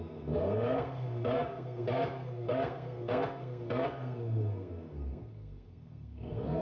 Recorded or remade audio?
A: remade